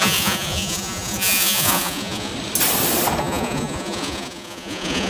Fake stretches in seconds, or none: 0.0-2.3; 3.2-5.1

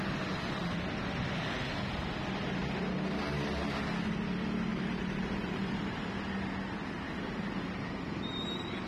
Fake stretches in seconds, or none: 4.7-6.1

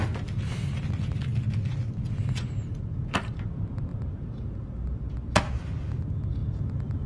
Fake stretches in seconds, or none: 2.6-3.5; 3.9-5.1; 6.4-7.1

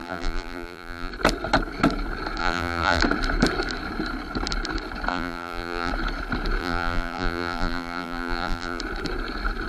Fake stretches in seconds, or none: 0.0-1.1; 2.4-3.0; 5.1-5.9; 6.6-8.8

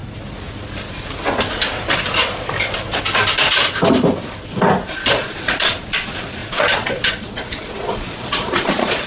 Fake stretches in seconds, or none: 5.1-9.1